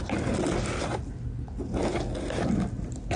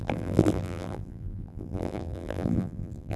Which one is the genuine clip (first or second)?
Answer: first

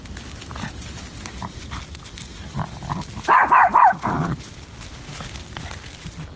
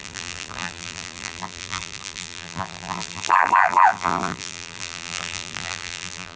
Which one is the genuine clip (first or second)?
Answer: first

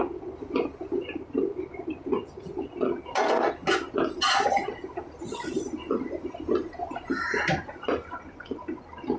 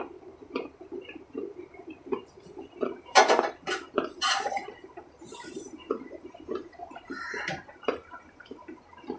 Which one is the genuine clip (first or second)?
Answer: first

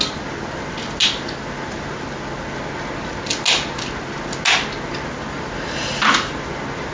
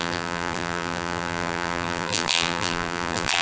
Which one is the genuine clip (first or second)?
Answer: first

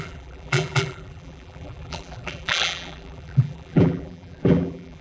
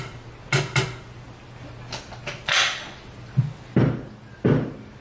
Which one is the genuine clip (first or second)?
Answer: second